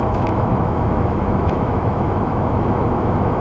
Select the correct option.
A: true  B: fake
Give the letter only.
B